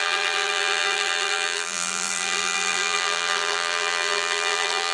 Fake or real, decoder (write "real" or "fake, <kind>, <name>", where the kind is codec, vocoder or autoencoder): fake, vocoder, BigVGAN v2